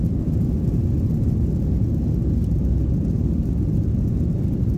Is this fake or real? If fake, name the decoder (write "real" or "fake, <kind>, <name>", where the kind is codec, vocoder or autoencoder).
fake, vocoder, BigVGAN v2